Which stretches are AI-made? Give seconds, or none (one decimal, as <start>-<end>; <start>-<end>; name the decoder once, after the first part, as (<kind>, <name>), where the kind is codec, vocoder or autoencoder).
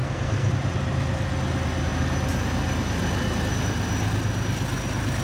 0.0-0.5 (codec, SNAC)